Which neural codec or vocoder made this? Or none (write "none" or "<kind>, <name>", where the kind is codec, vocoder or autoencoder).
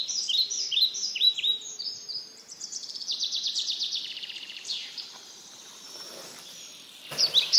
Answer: vocoder, BigVGAN v2